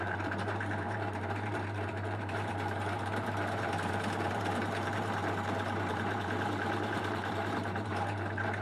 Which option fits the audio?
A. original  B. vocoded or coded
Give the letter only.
B